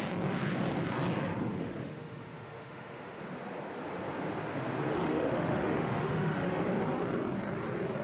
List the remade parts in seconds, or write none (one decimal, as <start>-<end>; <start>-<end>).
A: 1.5-3.2; 4.9-6.6